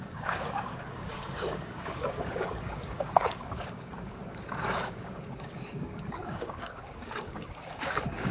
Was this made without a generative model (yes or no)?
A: no